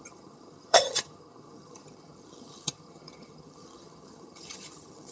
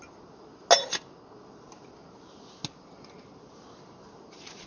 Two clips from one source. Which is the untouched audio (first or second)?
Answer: second